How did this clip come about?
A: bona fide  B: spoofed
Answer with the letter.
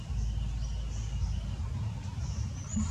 A